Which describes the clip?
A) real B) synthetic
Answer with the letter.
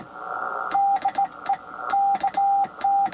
A